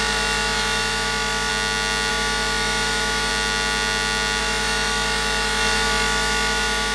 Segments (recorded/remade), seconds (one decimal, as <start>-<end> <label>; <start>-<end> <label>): 0.0-1.5 remade; 1.5-2.1 recorded; 2.1-3.3 remade; 3.3-4.4 recorded; 4.4-6.9 remade